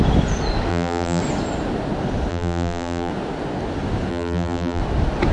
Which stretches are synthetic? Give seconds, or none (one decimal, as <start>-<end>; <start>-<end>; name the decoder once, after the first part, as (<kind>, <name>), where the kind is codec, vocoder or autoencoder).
0.7-1.2 (vocoder, BigVGAN v2); 2.3-3.1; 4.1-4.8